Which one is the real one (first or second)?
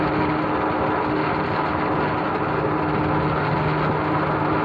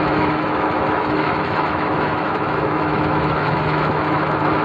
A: first